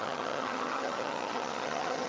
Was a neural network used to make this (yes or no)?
yes